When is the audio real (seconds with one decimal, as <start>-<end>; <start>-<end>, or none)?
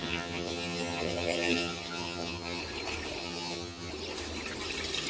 2.6-3.2; 3.9-5.1